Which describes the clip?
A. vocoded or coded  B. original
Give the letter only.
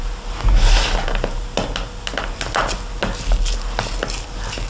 B